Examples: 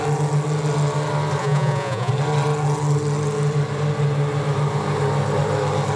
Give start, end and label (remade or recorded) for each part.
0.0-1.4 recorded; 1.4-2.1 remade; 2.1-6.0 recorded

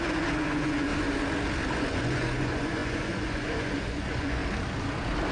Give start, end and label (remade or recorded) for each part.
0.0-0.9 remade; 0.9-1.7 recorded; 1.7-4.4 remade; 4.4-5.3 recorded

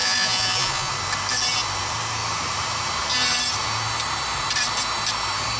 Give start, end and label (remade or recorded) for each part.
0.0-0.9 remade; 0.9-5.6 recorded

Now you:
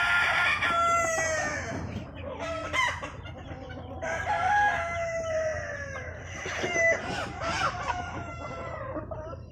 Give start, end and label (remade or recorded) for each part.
0.0-9.5 recorded

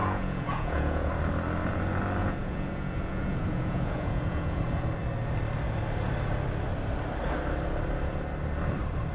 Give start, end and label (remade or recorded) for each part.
0.0-1.1 remade; 1.1-2.2 recorded; 2.2-4.6 remade; 4.6-9.1 recorded